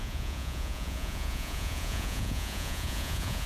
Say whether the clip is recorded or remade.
remade